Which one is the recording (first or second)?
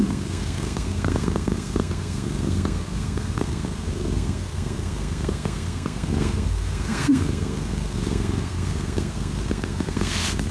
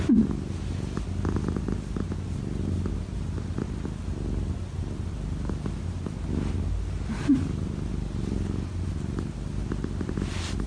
second